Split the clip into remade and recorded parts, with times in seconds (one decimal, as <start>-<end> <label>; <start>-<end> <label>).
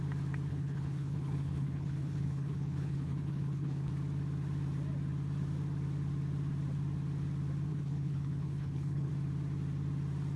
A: 0.0-0.5 recorded; 0.5-3.9 remade; 3.9-7.7 recorded; 7.7-9.1 remade; 9.1-10.4 recorded